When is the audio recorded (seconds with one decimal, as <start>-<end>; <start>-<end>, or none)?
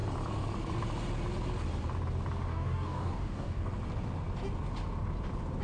0.0-2.5; 3.7-5.6